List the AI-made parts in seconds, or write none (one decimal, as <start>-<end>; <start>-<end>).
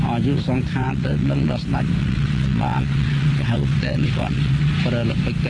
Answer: 0.8-1.6; 2.0-4.7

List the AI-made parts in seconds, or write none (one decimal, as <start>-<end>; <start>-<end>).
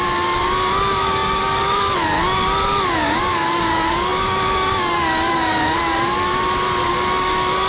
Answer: 0.0-6.3; 6.9-7.7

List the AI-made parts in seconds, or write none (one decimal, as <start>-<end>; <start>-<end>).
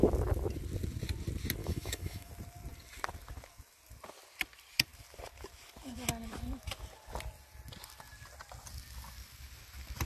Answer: 1.6-2.3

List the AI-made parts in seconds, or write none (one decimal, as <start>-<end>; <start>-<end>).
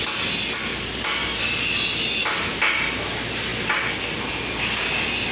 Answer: none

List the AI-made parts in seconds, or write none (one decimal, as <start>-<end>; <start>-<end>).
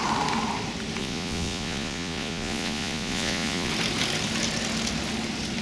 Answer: 1.0-3.7